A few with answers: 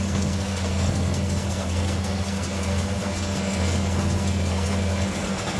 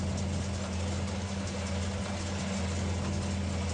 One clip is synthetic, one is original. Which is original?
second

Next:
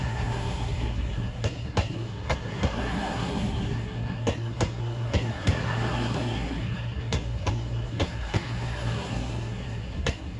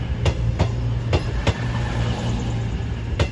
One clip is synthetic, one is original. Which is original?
second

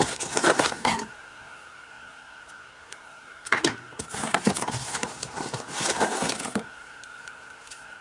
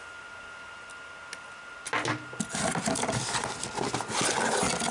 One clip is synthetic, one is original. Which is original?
second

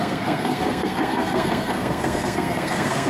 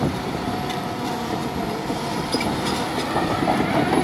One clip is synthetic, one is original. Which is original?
second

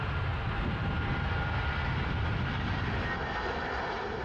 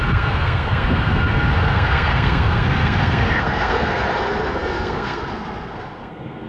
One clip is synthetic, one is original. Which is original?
first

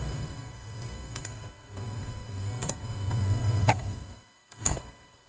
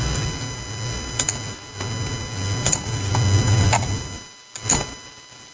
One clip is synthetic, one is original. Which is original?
second